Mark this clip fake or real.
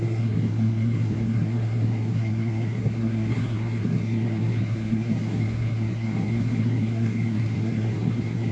fake